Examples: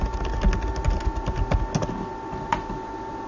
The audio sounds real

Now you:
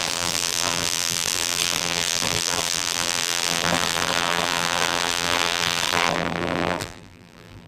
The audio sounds fake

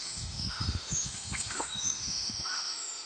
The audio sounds fake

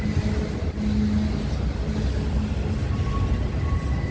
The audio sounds real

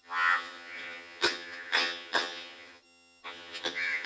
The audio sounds fake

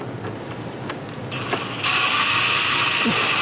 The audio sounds real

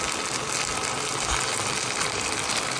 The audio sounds real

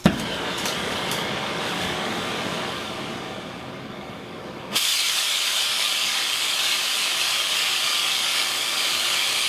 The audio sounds fake